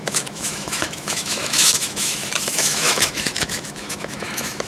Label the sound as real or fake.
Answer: fake